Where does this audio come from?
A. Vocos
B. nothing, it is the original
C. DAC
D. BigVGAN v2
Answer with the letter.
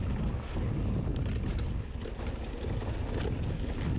B